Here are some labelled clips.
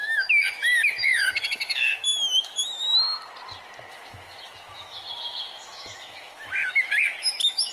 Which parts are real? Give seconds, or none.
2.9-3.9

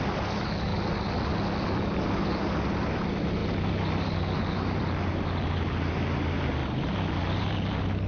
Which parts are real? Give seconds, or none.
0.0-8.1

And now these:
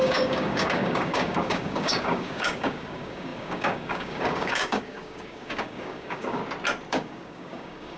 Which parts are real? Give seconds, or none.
6.4-6.9

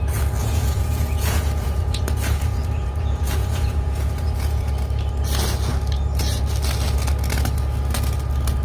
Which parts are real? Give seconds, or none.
0.0-0.4; 4.7-8.6